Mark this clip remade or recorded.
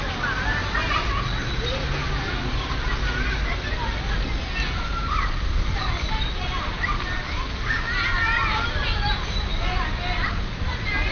recorded